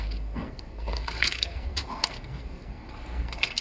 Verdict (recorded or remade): remade